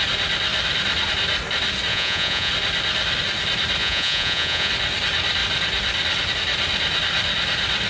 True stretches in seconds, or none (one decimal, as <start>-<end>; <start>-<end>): 0.0-1.9; 2.5-3.8; 4.7-7.9